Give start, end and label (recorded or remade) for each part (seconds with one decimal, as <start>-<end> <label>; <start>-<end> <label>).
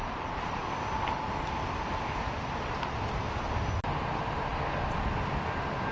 0.0-5.9 recorded